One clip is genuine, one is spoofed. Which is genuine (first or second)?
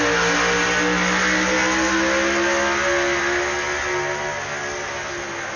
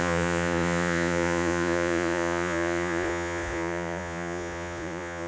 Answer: first